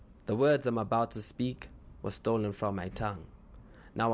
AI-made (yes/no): yes